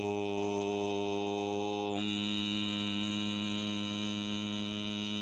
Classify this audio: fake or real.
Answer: real